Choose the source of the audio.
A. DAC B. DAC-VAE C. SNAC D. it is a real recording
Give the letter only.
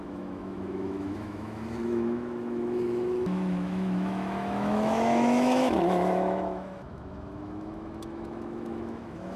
B